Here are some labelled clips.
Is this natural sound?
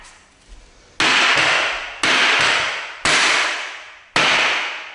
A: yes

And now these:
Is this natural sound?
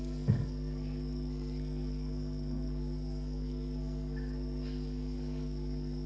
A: no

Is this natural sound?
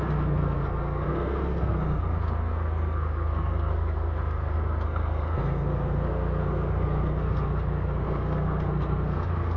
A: no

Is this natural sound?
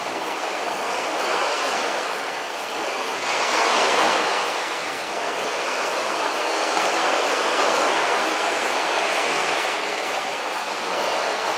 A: no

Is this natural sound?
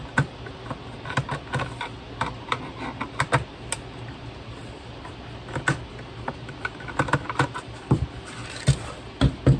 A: yes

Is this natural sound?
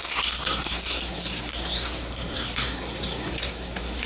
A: no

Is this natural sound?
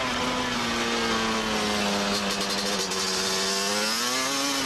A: yes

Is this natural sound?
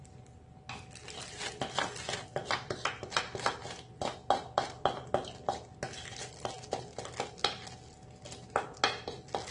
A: yes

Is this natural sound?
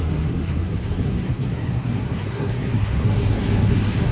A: no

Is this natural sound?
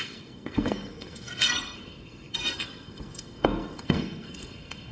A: no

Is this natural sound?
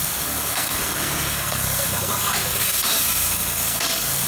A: no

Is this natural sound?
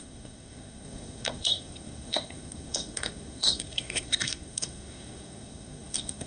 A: no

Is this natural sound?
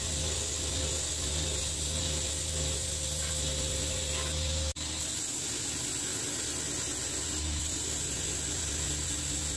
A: yes